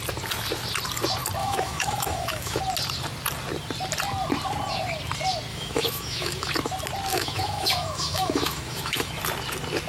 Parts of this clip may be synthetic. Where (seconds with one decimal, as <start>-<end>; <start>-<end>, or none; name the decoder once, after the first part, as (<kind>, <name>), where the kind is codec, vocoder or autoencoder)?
1.4-2.6 (autoencoder, DAC-VAE); 5.5-6.5; 7.1-9.1